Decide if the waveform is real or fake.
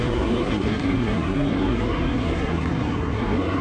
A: fake